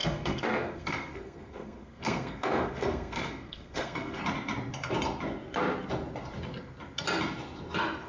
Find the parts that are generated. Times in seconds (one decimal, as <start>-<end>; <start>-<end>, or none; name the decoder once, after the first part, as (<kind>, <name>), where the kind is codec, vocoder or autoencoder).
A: 0.0-4.2 (codec, SNAC)